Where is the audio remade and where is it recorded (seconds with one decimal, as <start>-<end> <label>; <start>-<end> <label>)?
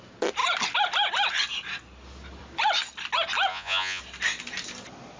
0.0-3.5 recorded; 3.5-4.0 remade; 4.0-5.2 recorded